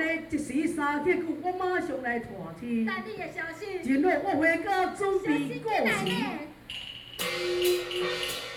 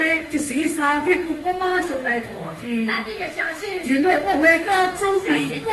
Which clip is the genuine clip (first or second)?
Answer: first